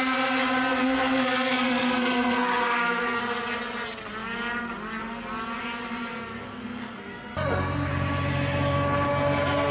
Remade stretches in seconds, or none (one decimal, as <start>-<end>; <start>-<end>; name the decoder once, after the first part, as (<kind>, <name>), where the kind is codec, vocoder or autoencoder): 0.8-3.2 (codec, SNAC); 6.5-7.9